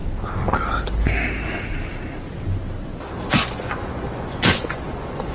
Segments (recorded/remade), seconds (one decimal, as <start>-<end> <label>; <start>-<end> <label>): 0.0-3.2 recorded; 3.2-5.3 remade